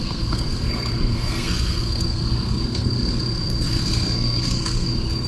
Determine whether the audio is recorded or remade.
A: remade